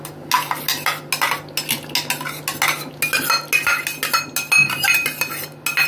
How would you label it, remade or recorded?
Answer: recorded